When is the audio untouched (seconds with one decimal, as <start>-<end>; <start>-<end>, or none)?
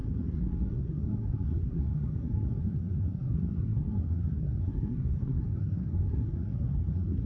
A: none